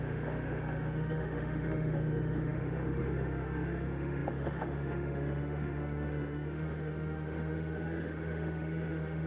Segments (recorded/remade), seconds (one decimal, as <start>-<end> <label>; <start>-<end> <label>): 0.0-9.3 remade